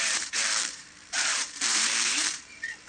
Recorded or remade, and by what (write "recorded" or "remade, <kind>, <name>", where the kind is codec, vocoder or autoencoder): remade, vocoder, BigVGAN v2